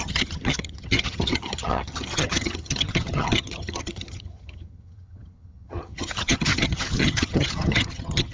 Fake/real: fake